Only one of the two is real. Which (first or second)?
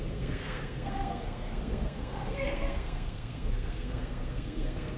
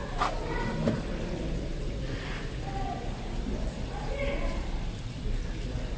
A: second